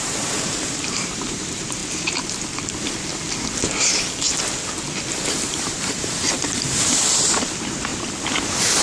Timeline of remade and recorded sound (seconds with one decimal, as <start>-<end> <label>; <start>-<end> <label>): 0.0-1.8 remade; 1.8-5.3 recorded; 5.3-7.9 remade; 7.9-8.8 recorded